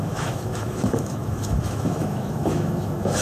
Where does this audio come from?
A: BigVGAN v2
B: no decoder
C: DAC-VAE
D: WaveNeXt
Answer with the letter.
C